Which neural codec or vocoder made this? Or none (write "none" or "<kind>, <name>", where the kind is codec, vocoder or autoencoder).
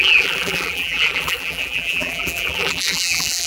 vocoder, BigVGAN v2